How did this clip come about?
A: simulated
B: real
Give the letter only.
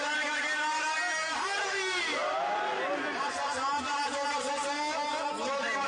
B